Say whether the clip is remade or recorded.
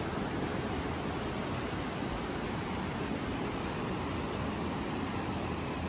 remade